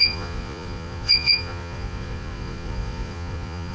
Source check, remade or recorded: remade